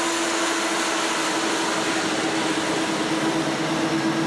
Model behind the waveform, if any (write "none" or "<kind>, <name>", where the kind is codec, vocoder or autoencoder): none